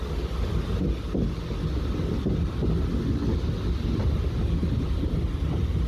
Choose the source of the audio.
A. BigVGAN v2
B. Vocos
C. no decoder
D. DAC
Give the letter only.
C